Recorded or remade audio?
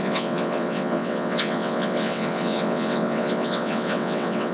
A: remade